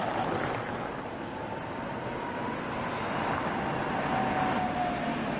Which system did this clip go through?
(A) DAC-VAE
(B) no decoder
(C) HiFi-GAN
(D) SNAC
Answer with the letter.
B